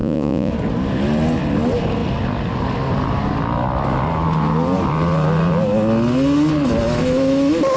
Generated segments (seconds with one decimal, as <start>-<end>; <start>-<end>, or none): 0.0-0.5